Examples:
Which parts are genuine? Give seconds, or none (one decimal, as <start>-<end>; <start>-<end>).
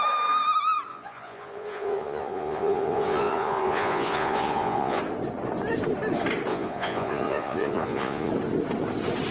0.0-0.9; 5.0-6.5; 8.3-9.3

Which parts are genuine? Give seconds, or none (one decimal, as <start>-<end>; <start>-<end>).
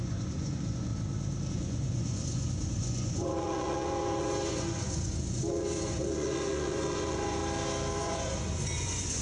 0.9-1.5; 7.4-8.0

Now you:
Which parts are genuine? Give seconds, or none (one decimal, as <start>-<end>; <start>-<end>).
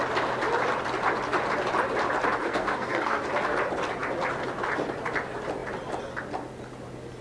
0.0-2.4; 3.2-7.2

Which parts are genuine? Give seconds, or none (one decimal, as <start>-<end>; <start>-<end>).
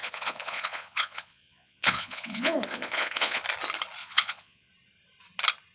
3.4-4.0; 4.7-5.7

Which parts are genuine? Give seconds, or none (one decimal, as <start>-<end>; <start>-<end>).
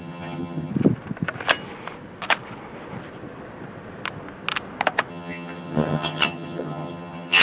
0.7-5.1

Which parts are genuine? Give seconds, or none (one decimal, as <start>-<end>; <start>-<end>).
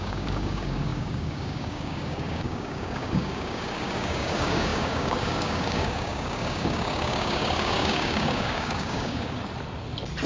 9.4-10.3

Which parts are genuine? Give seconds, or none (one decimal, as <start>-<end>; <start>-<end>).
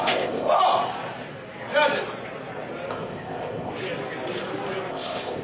0.6-2.9; 3.7-4.9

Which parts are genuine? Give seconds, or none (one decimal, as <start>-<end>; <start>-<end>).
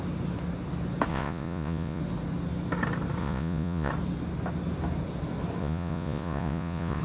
0.0-1.1; 2.0-3.2; 3.9-5.6